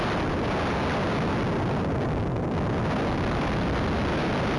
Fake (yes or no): yes